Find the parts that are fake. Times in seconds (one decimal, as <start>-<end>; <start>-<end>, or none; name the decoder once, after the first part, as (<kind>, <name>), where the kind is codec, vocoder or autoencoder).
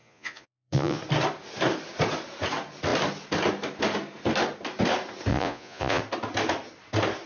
0.0-1.0 (vocoder, Vocos); 5.3-6.0